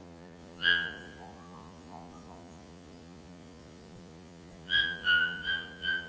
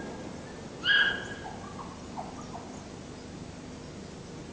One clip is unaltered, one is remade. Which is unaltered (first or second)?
second